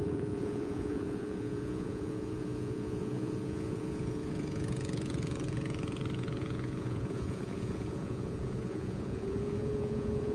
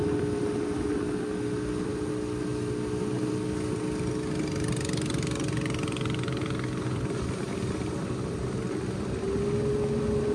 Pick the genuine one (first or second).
second